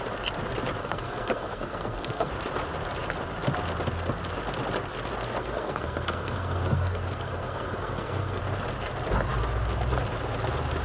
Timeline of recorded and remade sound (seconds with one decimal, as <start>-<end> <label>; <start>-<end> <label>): 0.0-0.8 recorded; 0.8-2.3 remade; 2.3-5.4 recorded; 5.4-8.4 remade; 8.4-10.8 recorded